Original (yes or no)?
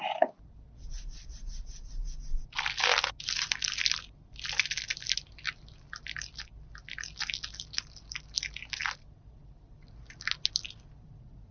yes